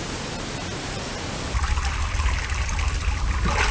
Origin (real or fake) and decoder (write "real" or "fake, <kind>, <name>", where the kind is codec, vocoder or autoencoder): real